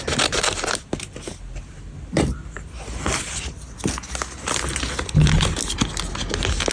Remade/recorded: recorded